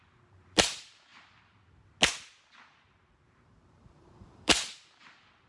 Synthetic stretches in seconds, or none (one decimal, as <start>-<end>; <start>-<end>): 0.0-1.1; 2.9-5.5